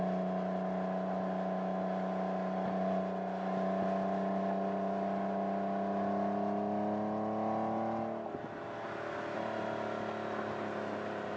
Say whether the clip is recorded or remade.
recorded